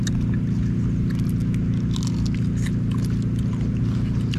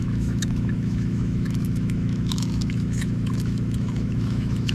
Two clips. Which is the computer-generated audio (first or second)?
second